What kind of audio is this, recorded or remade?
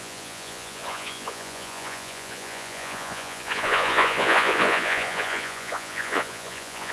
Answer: remade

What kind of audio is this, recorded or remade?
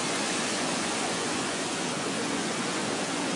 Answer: remade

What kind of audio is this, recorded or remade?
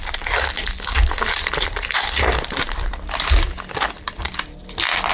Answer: recorded